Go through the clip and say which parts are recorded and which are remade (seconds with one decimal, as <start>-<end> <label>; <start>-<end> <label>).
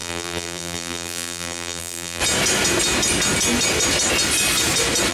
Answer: 0.0-2.2 remade; 2.2-5.1 recorded